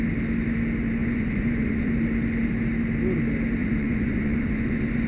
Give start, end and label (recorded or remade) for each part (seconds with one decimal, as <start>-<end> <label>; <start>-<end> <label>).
0.0-1.0 recorded; 1.0-1.9 remade; 1.9-3.6 recorded; 3.6-5.1 remade